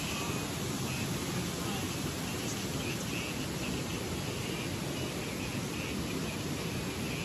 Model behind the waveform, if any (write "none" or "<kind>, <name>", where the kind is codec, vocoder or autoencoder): none